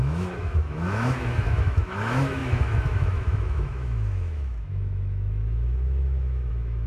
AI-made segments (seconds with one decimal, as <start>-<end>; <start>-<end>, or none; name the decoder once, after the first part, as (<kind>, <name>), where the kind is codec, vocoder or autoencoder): 0.0-6.9 (autoencoder, DAC-VAE)